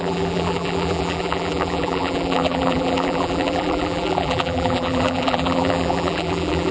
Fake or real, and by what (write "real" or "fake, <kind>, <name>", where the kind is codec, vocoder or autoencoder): fake, vocoder, BigVGAN v2